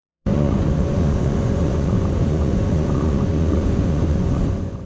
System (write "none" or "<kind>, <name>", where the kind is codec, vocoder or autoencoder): vocoder, Vocos